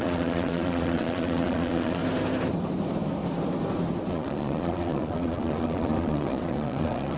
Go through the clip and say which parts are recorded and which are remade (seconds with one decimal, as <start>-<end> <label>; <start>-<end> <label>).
0.0-2.0 remade; 2.0-4.1 recorded; 4.1-7.2 remade